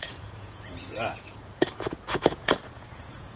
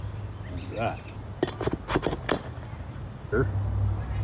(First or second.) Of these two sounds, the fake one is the first